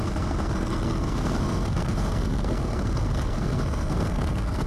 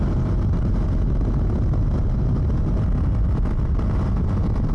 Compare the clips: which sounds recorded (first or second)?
second